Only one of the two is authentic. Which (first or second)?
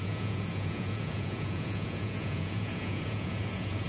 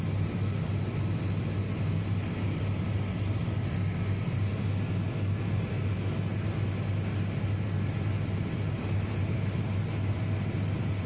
second